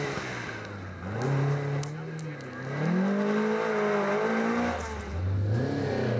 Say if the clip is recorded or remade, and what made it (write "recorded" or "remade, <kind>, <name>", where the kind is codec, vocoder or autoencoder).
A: recorded